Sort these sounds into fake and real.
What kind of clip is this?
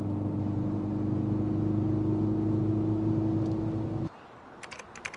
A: real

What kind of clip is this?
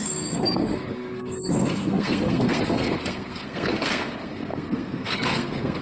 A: fake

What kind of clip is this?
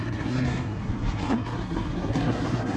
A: fake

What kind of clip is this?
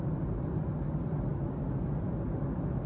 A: real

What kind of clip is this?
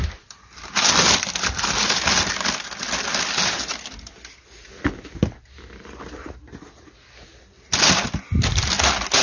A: real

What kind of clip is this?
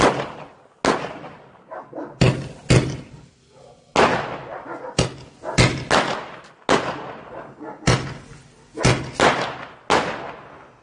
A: real